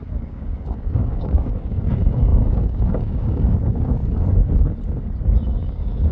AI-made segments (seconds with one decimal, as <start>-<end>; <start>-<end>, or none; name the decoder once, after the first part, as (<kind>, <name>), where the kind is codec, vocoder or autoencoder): 0.0-4.0 (codec, DAC); 5.6-6.1